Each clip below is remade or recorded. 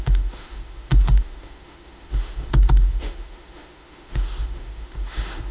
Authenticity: remade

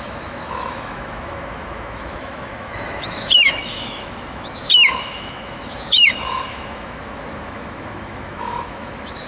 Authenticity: remade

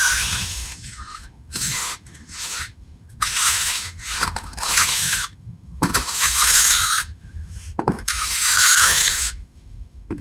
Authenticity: remade